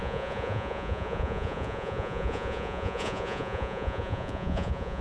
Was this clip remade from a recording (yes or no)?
yes